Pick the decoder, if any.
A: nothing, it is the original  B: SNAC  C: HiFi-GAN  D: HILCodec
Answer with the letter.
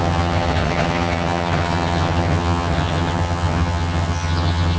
C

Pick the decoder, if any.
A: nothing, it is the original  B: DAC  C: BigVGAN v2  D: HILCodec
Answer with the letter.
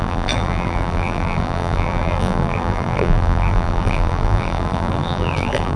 C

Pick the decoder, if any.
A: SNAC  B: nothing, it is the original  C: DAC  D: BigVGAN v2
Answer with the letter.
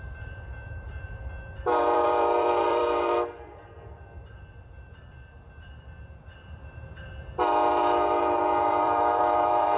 D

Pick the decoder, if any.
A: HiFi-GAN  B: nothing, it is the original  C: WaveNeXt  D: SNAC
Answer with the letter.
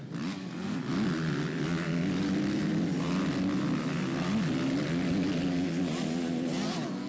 B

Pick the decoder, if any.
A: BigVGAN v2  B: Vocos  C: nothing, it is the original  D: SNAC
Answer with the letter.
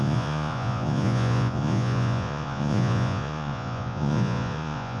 B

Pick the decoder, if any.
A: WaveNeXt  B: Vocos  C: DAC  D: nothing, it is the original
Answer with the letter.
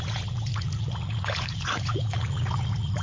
B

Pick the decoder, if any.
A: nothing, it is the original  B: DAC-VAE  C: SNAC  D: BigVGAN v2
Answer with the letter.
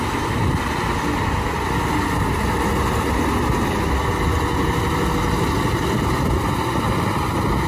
A